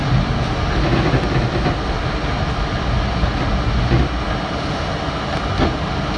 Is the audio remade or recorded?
recorded